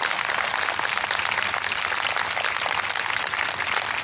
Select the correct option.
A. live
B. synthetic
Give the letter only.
B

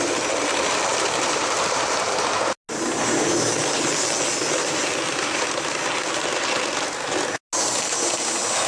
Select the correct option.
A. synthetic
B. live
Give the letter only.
B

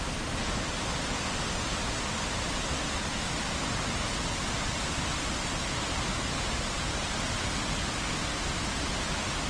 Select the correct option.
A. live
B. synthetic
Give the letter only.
A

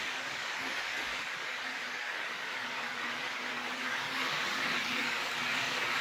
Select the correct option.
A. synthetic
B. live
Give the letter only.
A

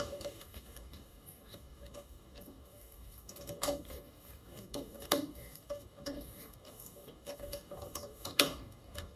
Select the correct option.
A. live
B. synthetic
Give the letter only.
B